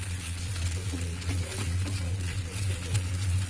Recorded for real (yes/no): no